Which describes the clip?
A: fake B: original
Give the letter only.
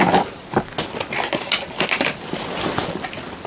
B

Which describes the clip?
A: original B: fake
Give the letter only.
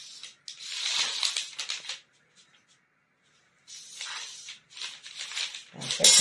A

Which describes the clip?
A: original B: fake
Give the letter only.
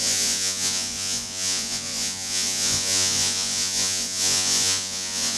B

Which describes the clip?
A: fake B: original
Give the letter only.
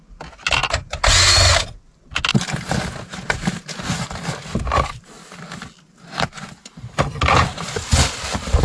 B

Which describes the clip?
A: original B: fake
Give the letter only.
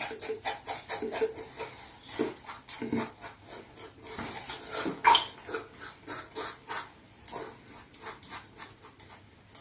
A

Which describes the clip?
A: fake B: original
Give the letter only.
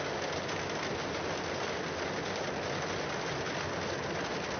B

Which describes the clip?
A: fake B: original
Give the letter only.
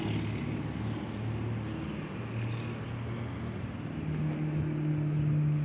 B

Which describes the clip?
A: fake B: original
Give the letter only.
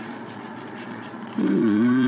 A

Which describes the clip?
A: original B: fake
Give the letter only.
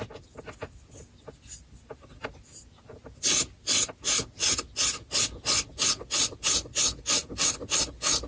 A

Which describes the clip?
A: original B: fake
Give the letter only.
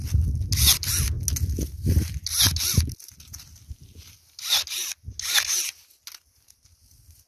A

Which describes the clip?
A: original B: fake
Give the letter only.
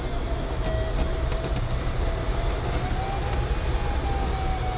A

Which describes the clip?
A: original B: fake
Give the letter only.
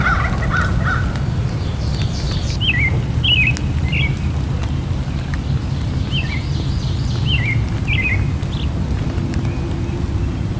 A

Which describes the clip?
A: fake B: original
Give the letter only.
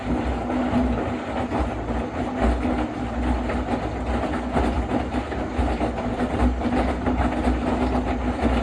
B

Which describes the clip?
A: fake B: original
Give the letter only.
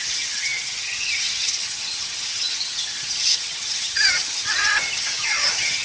A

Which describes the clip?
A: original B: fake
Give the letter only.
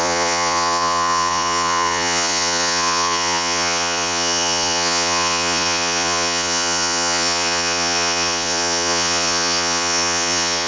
B